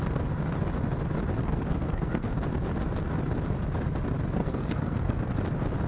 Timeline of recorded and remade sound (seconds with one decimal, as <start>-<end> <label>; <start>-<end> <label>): 0.0-1.4 recorded; 1.4-2.3 remade; 2.3-4.4 recorded; 4.4-5.3 remade; 5.3-5.9 recorded